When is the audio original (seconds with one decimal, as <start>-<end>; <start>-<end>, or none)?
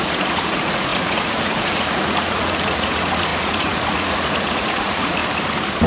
5.2-5.9